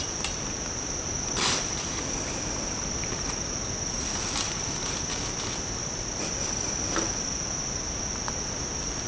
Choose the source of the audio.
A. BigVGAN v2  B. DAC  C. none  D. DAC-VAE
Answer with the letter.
C